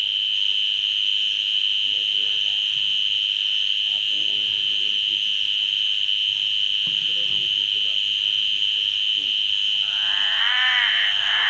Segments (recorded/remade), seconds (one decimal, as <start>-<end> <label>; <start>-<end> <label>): 0.0-11.5 recorded